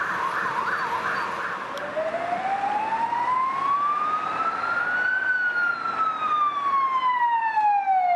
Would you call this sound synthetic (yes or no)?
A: no